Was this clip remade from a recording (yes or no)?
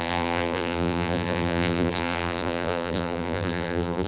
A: yes